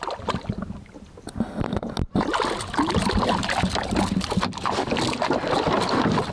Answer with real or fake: real